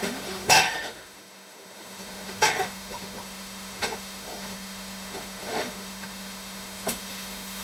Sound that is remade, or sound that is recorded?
remade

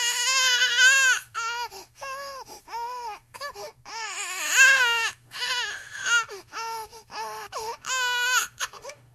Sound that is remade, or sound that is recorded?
remade